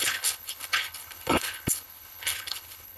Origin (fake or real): fake